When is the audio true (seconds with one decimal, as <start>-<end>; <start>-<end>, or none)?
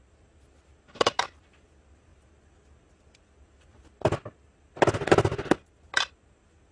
0.0-6.7